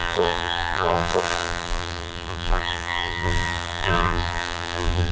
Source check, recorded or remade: remade